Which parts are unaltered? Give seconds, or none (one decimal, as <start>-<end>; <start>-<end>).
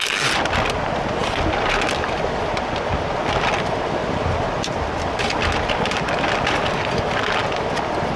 0.0-1.2; 5.3-7.4